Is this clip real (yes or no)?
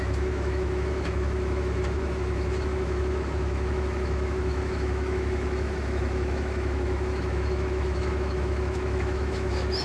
no